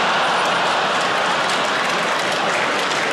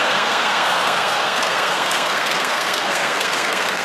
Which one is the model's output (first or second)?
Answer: second